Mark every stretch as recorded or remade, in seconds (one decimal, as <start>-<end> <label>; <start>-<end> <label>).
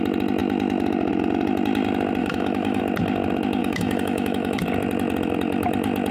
0.0-2.2 recorded; 2.2-2.8 remade; 2.8-3.6 recorded; 3.6-4.6 remade; 4.6-6.1 recorded